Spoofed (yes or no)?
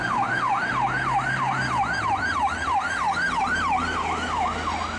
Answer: no